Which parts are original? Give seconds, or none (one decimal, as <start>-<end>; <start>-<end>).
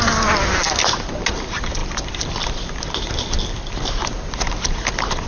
0.0-5.3